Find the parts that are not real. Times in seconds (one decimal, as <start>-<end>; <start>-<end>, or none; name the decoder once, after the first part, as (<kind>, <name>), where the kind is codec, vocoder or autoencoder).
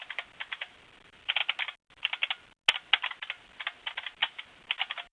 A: 0.0-1.4 (vocoder, BigVGAN v2); 3.1-5.1